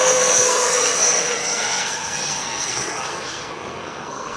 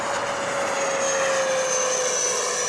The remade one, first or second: first